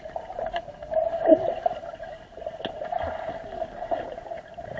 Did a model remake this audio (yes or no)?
no